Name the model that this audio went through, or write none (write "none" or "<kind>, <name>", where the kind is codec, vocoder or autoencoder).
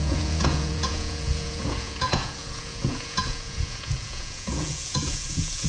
vocoder, Vocos